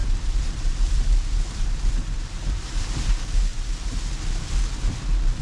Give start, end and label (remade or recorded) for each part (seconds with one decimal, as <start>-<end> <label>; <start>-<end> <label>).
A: 0.0-3.1 remade; 3.1-3.5 recorded; 3.5-4.1 remade; 4.1-5.4 recorded